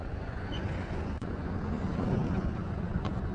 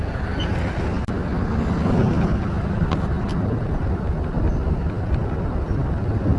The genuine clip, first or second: second